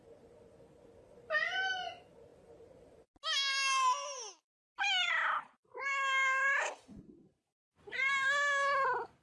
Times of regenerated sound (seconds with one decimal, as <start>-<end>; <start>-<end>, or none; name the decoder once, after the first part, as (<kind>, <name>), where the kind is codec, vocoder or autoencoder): none